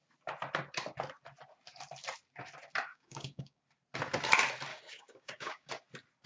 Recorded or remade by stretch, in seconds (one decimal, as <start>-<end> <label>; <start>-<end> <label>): 0.0-2.9 recorded; 2.9-3.6 remade; 3.6-4.7 recorded; 4.7-5.7 remade; 5.7-6.3 recorded